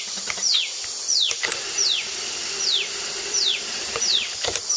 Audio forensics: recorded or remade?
recorded